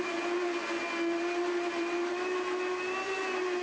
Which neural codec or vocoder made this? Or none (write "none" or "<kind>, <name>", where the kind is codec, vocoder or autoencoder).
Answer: none